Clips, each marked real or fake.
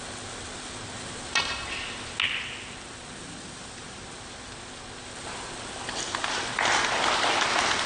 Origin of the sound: real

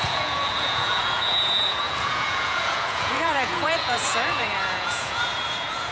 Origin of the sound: fake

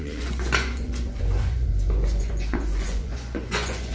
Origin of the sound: fake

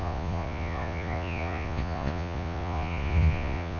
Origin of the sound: fake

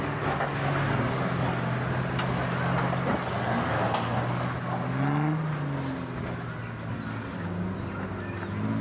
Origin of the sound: real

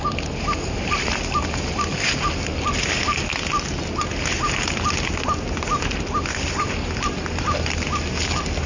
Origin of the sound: real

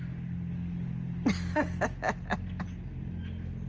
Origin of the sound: real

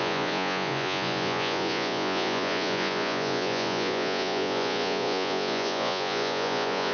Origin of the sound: fake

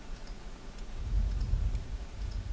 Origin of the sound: fake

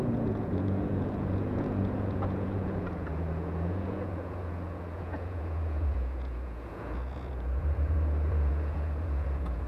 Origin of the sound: fake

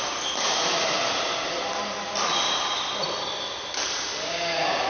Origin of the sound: real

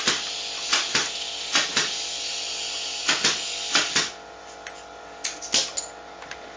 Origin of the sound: real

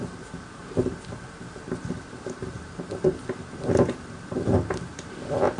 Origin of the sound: real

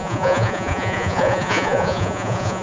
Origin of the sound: fake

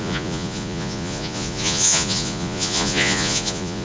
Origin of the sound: fake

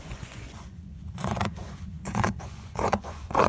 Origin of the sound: fake